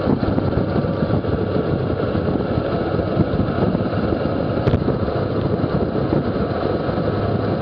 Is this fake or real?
real